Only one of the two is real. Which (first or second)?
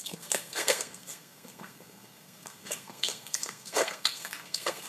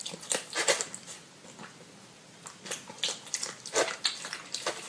second